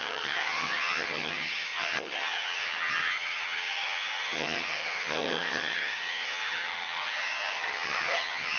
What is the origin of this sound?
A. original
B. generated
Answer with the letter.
B